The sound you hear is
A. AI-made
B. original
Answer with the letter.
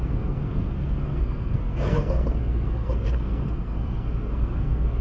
A